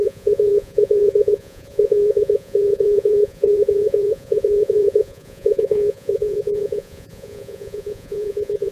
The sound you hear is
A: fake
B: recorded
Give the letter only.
A